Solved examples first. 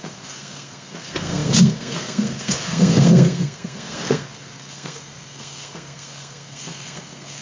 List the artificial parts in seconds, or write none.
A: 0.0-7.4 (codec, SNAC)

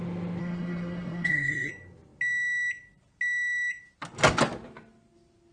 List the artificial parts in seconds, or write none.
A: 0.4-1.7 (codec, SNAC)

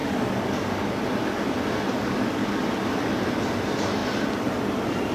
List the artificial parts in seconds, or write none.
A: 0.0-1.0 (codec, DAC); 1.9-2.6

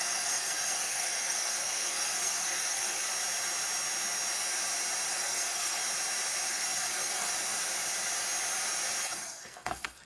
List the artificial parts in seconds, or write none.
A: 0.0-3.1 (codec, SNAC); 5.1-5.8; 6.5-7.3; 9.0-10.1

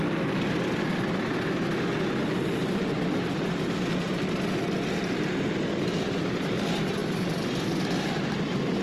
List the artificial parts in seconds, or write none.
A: none